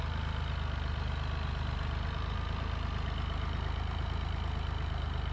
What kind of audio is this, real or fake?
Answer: real